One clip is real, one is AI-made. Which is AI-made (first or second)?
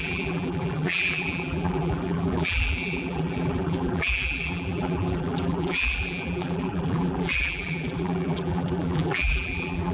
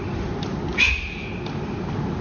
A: first